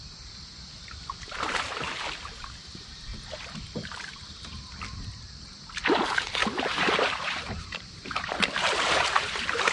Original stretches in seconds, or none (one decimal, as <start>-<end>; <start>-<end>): 0.0-6.4